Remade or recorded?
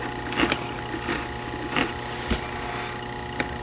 recorded